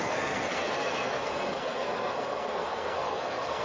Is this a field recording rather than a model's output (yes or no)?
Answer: no